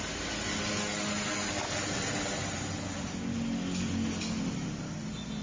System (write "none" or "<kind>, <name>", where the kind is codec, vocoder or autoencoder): none